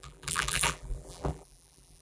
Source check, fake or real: fake